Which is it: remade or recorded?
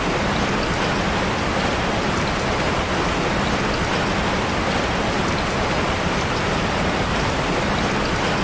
recorded